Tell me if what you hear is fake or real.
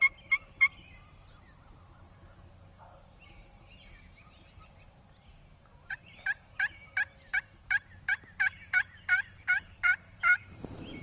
fake